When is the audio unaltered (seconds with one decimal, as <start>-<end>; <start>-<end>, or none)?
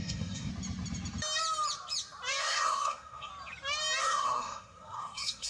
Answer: 0.5-2.4; 3.3-4.0